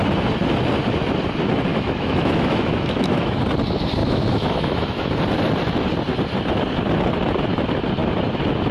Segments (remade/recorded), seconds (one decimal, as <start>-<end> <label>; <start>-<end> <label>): 0.0-1.7 recorded; 1.7-3.4 remade; 3.4-4.0 recorded; 4.0-5.1 remade; 5.1-8.7 recorded